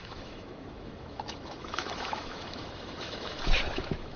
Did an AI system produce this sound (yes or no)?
yes